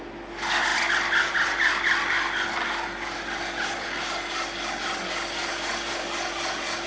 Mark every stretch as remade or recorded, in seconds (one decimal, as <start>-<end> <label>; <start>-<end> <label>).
0.0-6.9 recorded